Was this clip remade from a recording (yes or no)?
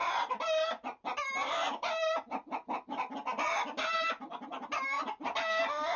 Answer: no